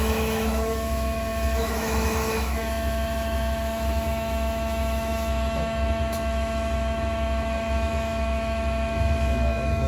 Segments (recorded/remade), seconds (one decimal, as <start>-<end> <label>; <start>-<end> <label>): 0.0-9.9 remade